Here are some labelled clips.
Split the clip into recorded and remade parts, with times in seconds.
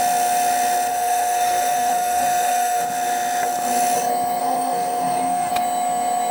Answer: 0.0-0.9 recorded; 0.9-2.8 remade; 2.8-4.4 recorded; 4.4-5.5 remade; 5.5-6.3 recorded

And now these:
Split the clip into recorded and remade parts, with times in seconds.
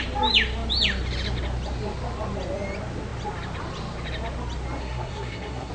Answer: 0.0-4.8 recorded; 4.8-5.7 remade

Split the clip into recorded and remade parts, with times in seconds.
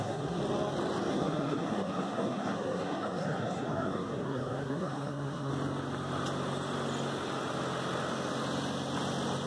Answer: 0.0-0.4 remade; 0.4-1.1 recorded; 1.1-5.5 remade; 5.5-9.5 recorded